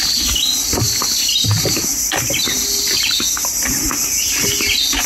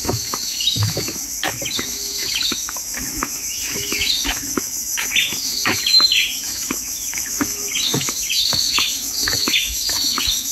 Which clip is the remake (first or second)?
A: second